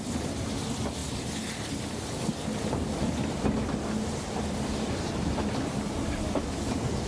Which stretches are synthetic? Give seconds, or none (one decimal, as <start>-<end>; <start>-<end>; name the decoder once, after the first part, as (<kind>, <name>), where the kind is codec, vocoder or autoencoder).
none